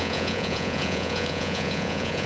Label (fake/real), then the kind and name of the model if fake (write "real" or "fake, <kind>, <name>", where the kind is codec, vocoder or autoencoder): fake, vocoder, Vocos